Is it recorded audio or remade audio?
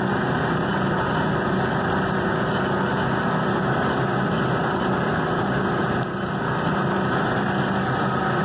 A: recorded